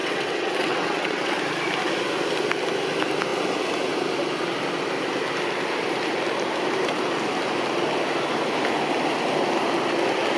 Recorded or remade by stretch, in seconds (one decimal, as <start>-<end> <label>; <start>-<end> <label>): 0.0-1.4 remade; 1.4-10.4 recorded